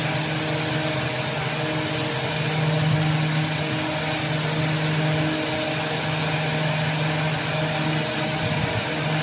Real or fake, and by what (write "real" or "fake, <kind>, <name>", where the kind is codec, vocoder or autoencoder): real